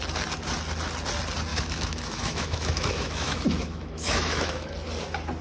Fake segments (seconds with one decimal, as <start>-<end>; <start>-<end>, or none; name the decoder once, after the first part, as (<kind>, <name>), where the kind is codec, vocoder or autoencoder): 1.5-4.7 (autoencoder, DAC-VAE)